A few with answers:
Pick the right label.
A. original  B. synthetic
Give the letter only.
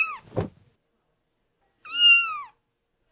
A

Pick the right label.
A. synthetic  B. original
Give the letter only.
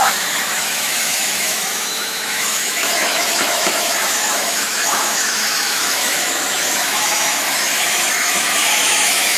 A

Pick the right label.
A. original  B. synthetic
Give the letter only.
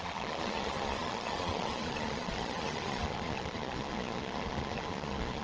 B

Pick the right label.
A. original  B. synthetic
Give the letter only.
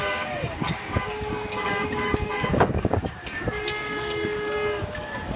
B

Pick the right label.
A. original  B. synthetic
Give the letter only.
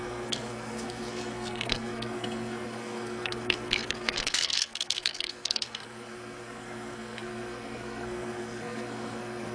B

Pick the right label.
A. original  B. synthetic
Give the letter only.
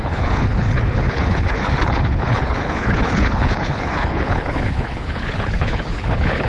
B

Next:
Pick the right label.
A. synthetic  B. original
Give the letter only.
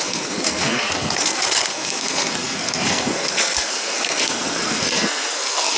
A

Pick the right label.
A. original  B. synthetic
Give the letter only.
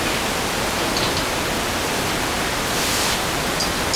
A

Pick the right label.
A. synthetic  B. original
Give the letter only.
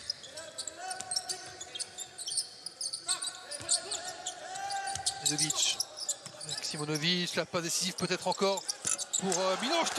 B